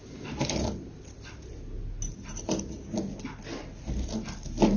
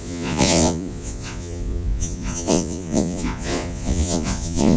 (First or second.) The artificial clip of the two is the second